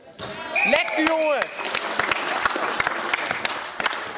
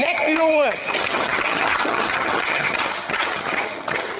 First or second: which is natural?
first